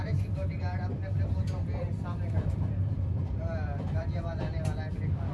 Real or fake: fake